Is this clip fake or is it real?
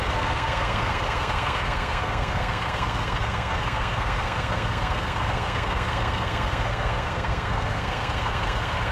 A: fake